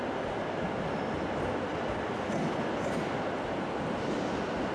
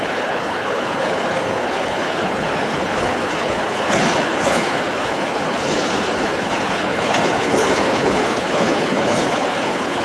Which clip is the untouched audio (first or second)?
first